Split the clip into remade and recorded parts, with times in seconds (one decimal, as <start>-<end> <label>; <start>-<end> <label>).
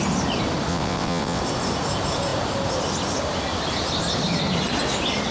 0.0-0.7 recorded; 0.7-1.4 remade; 1.4-5.3 recorded